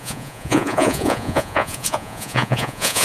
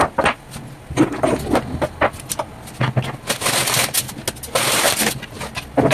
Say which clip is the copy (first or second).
first